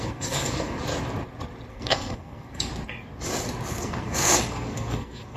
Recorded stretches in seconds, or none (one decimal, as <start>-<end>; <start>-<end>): 0.8-1.7; 2.7-3.7